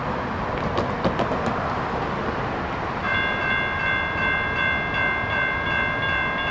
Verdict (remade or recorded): recorded